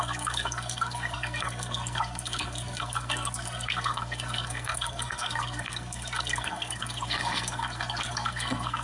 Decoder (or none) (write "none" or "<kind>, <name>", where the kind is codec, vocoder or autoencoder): codec, SNAC